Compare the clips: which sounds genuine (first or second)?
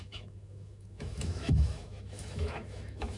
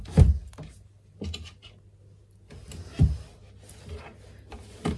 second